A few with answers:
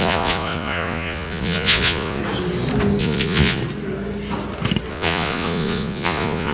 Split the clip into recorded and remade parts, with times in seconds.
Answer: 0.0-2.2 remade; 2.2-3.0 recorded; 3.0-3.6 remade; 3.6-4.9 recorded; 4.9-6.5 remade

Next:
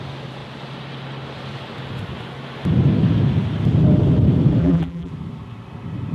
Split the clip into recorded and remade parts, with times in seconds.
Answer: 0.0-4.6 recorded; 4.6-5.1 remade; 5.1-6.1 recorded

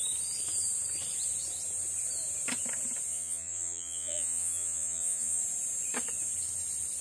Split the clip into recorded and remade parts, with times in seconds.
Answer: 0.0-3.1 recorded; 3.1-5.4 remade; 5.4-7.0 recorded